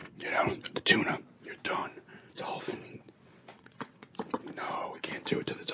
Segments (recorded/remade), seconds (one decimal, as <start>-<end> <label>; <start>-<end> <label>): 0.0-0.6 remade; 0.6-1.8 recorded; 1.8-2.3 remade; 2.3-2.7 recorded; 2.7-4.1 remade; 4.1-5.7 recorded